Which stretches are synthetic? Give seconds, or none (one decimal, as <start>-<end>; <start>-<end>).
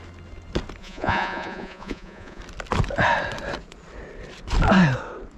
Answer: 0.8-2.4